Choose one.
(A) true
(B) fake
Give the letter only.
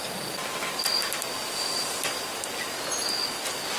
A